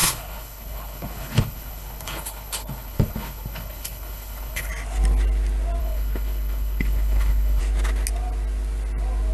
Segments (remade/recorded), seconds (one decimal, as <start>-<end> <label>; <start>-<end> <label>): 0.0-4.7 remade; 4.7-5.8 recorded; 5.8-7.6 remade; 7.6-9.3 recorded